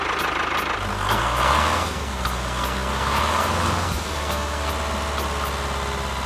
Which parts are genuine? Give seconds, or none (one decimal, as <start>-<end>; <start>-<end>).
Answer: 0.0-0.9; 4.7-6.3